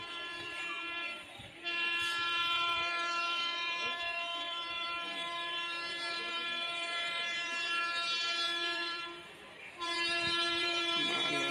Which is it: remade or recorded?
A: remade